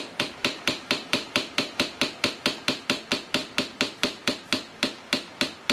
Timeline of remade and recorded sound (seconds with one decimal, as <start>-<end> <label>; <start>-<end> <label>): 0.0-0.4 recorded; 0.4-2.0 remade; 2.0-3.4 recorded; 3.4-4.5 remade; 4.5-5.7 recorded